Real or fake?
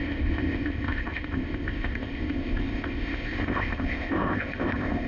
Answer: fake